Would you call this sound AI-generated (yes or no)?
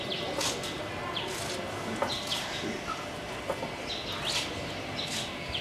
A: no